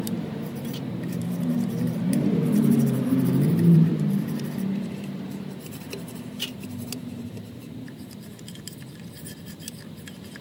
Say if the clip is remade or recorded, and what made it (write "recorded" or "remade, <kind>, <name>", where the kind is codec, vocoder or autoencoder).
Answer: remade, vocoder, BigVGAN v2